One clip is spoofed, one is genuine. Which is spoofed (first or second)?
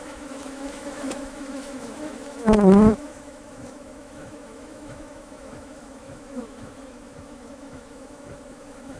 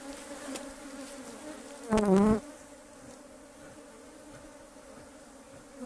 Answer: first